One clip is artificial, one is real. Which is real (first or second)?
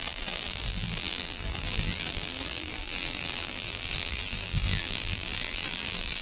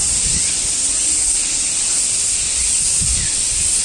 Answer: second